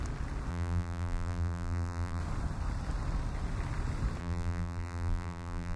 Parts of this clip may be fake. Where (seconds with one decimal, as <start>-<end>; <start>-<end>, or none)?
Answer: 0.5-2.2; 4.2-5.8